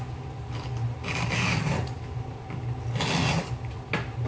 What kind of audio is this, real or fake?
real